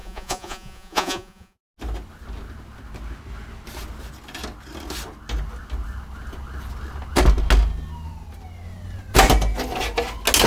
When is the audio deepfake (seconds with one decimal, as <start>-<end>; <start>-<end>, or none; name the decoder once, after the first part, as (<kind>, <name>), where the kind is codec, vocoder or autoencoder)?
0.0-1.6 (vocoder, Vocos)